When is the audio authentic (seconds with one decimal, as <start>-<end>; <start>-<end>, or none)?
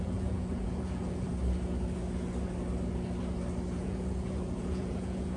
1.3-3.8